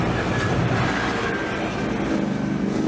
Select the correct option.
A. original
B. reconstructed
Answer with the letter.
A